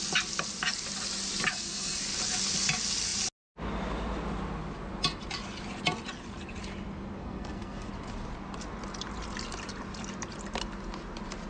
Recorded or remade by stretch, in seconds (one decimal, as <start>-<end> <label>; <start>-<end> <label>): 0.0-1.5 recorded; 1.5-2.0 remade; 2.0-7.2 recorded; 7.2-7.9 remade; 7.9-11.5 recorded

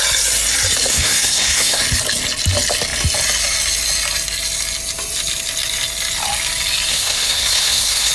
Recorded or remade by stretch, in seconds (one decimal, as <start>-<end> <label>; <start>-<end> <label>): 0.0-0.9 recorded; 0.9-1.8 remade; 1.8-6.9 recorded; 6.9-8.1 remade

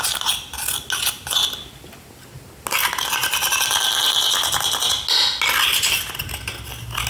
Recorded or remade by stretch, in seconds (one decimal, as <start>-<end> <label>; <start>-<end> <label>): 0.0-7.1 recorded

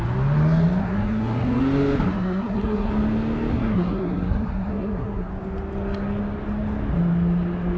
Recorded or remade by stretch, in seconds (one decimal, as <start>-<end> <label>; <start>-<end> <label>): 0.0-0.8 recorded; 0.8-1.6 remade; 1.6-2.1 recorded; 2.1-2.9 remade; 2.9-3.5 recorded; 3.5-5.3 remade; 5.3-7.8 recorded

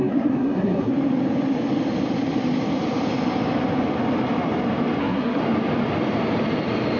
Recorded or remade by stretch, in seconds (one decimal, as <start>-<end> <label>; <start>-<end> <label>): 0.0-0.9 remade; 0.9-5.0 recorded; 5.0-5.4 remade; 5.4-7.0 recorded